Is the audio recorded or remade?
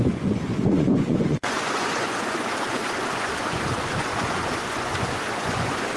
remade